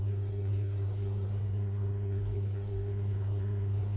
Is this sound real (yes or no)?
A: no